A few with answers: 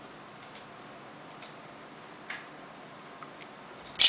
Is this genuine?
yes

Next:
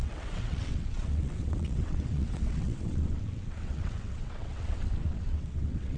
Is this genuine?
no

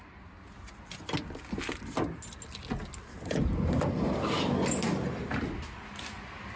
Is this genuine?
yes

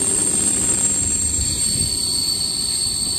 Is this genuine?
yes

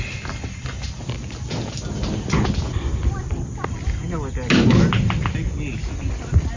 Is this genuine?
yes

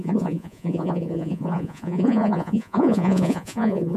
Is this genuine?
no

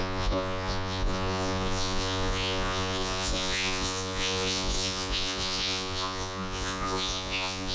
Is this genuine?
no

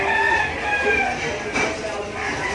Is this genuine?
yes